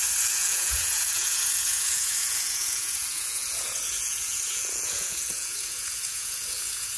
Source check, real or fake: fake